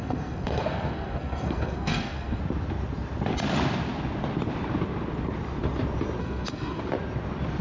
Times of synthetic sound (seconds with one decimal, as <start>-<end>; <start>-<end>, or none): 0.0-2.4; 6.2-6.8